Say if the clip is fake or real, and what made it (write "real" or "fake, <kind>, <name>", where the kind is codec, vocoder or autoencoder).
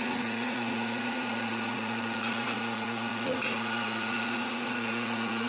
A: fake, vocoder, Vocos